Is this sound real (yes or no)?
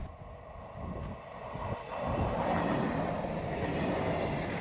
yes